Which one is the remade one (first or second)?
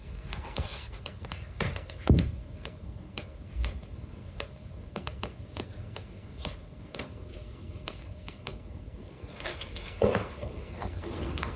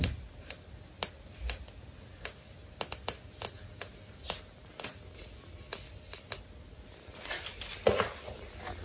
first